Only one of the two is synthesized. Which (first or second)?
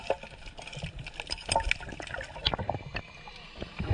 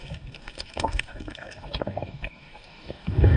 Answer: second